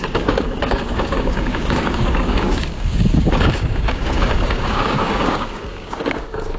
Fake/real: fake